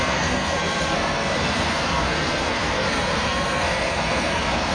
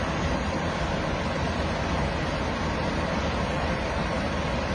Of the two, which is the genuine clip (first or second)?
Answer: second